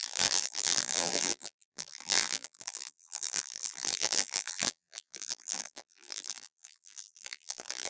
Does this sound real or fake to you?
fake